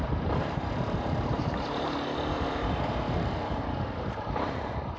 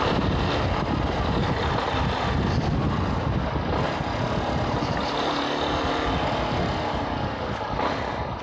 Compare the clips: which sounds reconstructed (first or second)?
first